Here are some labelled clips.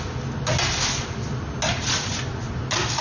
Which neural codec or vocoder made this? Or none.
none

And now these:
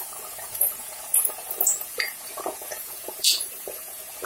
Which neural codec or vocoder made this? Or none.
vocoder, Vocos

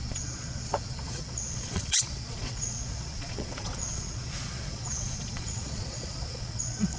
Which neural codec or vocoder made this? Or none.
vocoder, Vocos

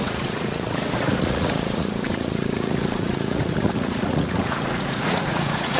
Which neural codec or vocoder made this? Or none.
vocoder, Vocos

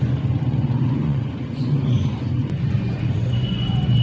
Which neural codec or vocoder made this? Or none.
vocoder, Vocos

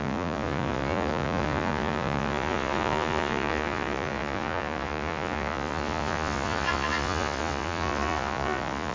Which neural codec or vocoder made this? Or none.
vocoder, Vocos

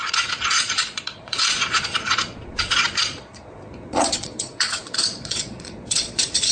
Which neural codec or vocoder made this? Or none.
vocoder, Vocos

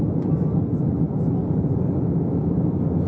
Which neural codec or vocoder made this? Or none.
none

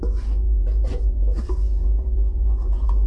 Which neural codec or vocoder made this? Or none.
vocoder, Vocos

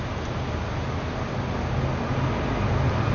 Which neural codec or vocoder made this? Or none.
none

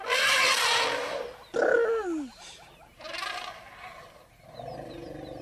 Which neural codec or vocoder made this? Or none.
none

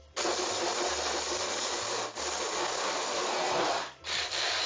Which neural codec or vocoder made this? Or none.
none